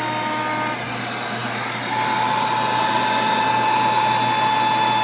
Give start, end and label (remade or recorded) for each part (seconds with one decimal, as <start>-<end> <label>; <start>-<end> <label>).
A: 0.0-5.0 recorded